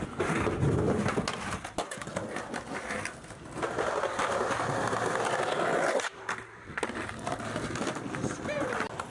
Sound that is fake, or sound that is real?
real